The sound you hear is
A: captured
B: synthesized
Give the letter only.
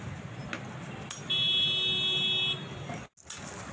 A